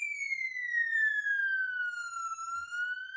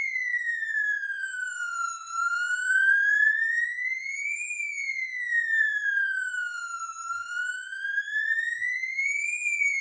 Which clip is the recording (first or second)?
first